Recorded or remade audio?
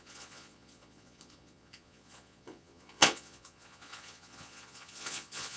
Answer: remade